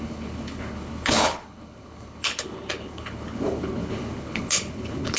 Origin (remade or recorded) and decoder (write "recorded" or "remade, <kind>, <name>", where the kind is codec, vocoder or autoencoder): remade, codec, HILCodec